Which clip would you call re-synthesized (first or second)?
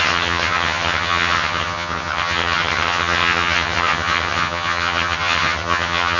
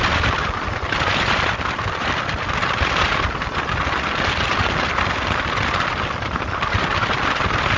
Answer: first